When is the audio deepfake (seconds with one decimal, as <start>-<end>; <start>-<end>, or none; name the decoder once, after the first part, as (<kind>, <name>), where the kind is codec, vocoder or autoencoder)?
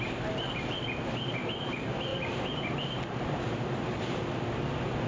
0.0-5.1 (vocoder, BigVGAN v2)